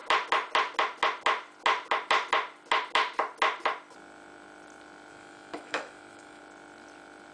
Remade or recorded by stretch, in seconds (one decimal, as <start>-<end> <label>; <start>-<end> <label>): 0.0-5.1 recorded; 5.1-6.4 remade; 6.4-7.3 recorded